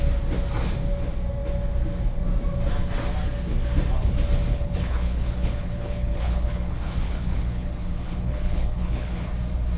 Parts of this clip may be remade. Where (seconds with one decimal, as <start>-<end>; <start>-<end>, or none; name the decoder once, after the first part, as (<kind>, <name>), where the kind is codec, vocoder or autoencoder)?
4.5-9.3 (codec, HILCodec)